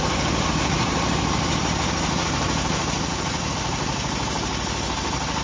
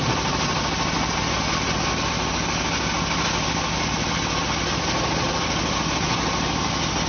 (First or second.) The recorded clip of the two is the second